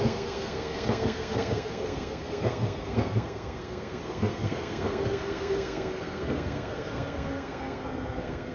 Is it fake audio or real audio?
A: fake